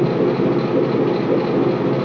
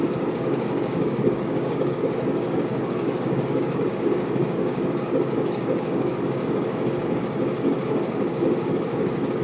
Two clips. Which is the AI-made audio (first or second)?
second